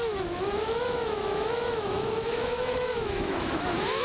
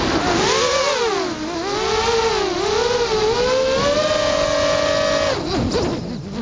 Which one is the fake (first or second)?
first